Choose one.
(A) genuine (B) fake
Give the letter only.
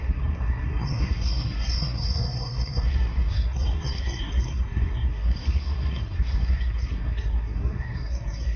B